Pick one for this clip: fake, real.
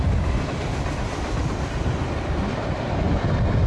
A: real